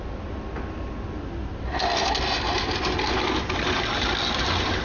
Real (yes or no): yes